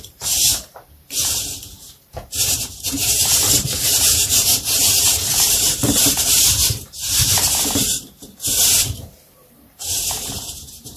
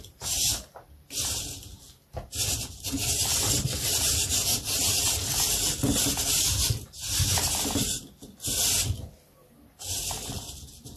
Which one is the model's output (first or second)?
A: first